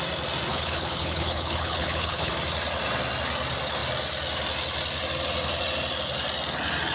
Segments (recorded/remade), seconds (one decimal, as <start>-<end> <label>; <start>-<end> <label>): 0.0-0.5 recorded; 0.5-2.3 remade; 2.3-6.9 recorded